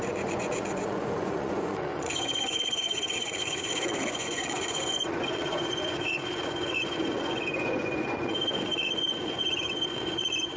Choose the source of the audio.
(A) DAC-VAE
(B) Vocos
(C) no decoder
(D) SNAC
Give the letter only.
B